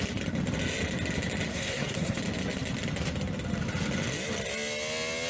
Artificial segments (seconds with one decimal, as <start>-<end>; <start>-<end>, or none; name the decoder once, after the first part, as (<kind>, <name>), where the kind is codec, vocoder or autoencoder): 1.5-2.2 (codec, SNAC)